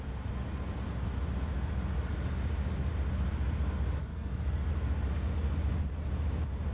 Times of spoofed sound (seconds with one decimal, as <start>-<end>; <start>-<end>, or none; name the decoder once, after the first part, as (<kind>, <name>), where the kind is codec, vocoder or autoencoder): 4.1-4.7 (codec, SNAC)